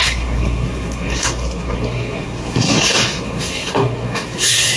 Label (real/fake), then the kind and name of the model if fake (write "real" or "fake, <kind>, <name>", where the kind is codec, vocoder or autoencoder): fake, codec, SNAC